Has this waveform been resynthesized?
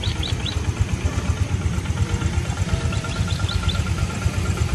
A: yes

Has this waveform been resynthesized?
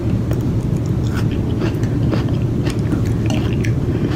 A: no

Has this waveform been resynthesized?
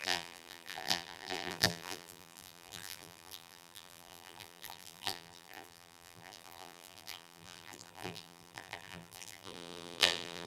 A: yes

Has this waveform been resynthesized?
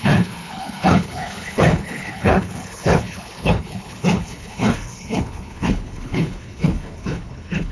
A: yes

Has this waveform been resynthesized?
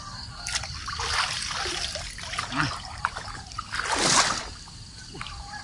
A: no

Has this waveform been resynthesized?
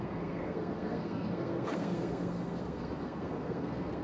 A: yes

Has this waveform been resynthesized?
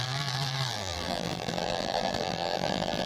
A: yes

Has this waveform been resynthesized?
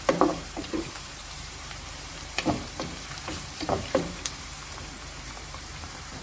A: yes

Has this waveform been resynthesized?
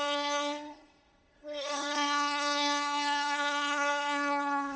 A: yes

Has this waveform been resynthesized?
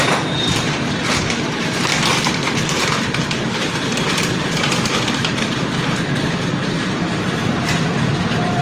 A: yes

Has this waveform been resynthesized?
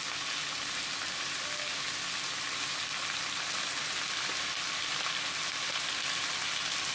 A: no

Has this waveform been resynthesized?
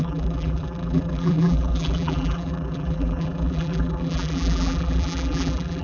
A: yes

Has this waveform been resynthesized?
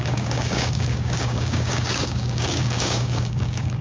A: yes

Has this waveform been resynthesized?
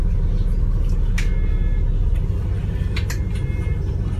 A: no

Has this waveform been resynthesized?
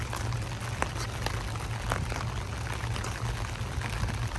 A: no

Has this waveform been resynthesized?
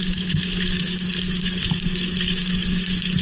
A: yes